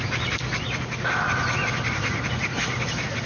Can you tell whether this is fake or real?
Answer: real